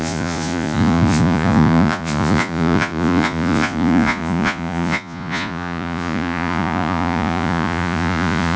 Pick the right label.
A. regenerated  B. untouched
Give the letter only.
A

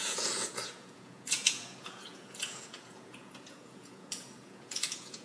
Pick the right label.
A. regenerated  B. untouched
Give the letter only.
A